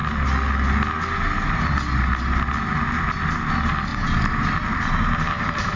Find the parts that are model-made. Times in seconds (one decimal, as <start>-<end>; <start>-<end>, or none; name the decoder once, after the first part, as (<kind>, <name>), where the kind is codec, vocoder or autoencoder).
3.9-5.8 (vocoder, BigVGAN v2)